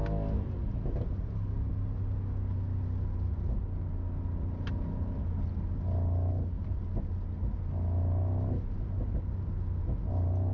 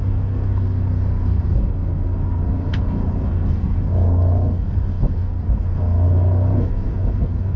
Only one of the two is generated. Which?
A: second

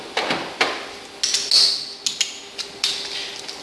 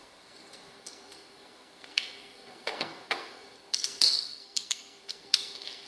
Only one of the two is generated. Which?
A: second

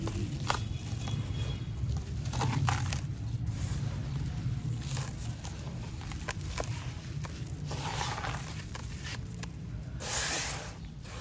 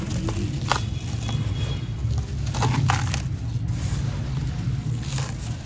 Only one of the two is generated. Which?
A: first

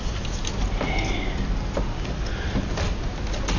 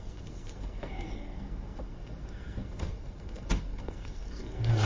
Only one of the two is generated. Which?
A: second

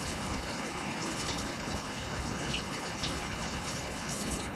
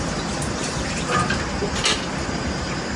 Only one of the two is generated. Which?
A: first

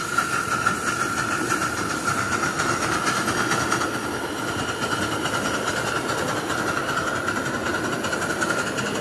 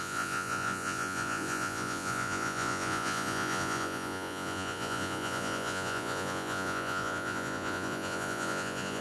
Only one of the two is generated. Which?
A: second